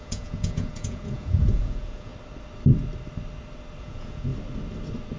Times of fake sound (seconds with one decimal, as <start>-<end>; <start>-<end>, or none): 0.0-2.1; 3.8-4.3

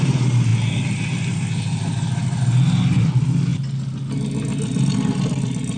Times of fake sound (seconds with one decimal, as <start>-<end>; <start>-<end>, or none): none

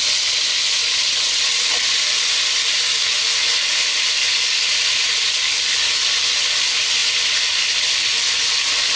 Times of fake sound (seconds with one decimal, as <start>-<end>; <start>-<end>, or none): none

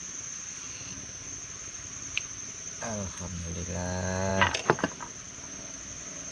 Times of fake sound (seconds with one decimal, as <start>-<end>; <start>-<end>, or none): none